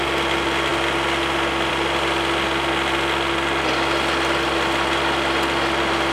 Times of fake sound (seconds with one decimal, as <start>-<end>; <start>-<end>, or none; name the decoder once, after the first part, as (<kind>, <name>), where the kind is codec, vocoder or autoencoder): none